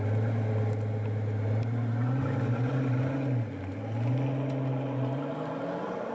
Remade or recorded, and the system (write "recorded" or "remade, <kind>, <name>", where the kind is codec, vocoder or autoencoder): recorded